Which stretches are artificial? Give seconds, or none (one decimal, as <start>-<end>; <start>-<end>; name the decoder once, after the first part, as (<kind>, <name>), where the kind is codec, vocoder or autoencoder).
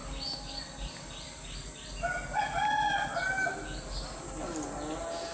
none